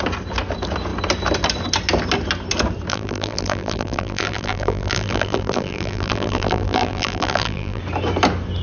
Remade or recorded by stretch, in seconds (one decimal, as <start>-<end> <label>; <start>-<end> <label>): 0.0-2.9 recorded; 2.9-7.8 remade; 7.8-8.6 recorded